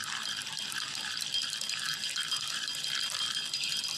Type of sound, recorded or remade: recorded